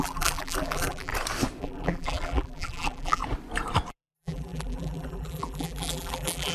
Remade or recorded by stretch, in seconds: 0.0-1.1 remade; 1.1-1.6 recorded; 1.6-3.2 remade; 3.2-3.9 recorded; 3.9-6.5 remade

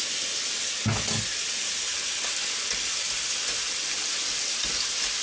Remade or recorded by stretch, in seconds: 0.0-5.2 recorded